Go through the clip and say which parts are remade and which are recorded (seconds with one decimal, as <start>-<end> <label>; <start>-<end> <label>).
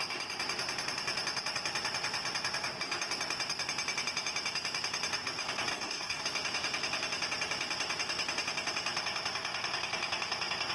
0.0-5.7 recorded; 5.7-6.2 remade; 6.2-10.7 recorded